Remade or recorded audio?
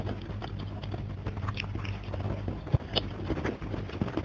recorded